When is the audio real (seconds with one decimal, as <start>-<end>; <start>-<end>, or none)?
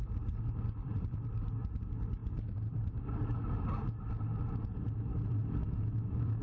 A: 0.0-5.6